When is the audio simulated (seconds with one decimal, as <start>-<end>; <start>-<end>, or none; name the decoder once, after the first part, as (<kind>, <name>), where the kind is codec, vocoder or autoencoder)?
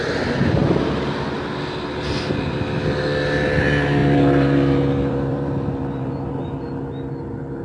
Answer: 4.0-6.3 (vocoder, BigVGAN v2)